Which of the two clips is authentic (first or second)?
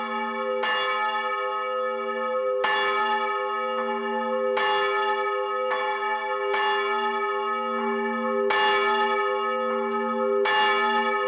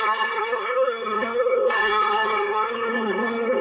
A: first